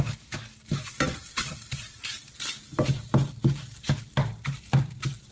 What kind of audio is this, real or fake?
real